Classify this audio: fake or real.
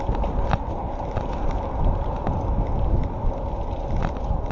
real